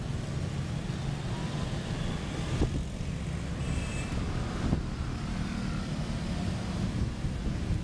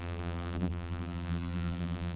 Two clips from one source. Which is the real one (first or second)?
first